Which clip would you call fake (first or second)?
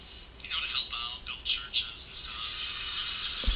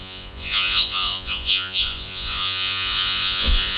second